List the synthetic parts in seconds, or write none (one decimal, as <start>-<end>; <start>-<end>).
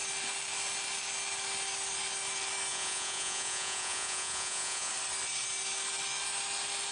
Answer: 2.7-4.9